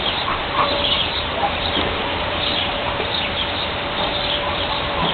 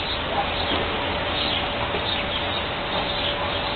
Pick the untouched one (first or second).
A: second